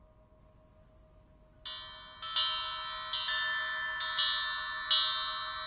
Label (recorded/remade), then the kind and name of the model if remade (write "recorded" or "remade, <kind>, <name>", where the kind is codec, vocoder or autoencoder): recorded